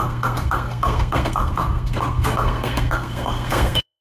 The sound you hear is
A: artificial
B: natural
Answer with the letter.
A